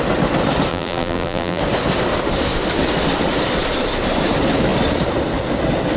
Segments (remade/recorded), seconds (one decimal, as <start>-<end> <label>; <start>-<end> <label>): 0.0-0.7 recorded; 0.7-1.6 remade; 1.6-6.0 recorded